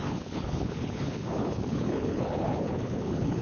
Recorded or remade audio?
remade